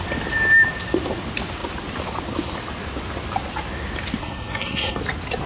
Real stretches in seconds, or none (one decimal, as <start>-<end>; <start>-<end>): 0.0-4.2; 5.0-5.5